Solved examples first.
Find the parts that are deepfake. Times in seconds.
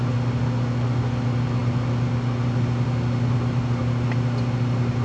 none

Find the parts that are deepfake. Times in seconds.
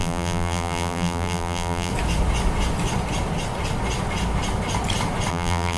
0.0-1.9 (vocoder, BigVGAN v2); 5.3-5.8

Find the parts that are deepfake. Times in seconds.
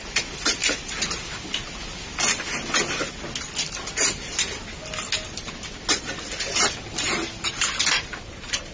0.6-1.1 (vocoder, BigVGAN v2)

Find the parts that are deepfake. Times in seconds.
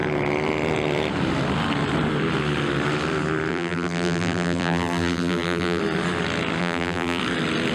3.5-5.8 (vocoder, BigVGAN v2); 6.6-7.2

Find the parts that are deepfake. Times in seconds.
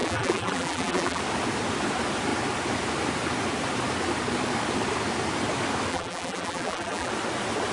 0.0-1.2 (vocoder, BigVGAN v2); 5.9-7.1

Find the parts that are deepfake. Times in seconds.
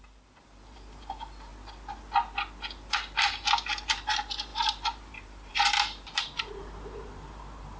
0.0-1.5 (vocoder, BigVGAN v2); 3.9-7.8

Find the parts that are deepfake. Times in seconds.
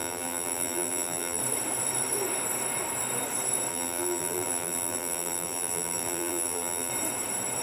0.0-1.4 (vocoder, BigVGAN v2); 3.7-6.9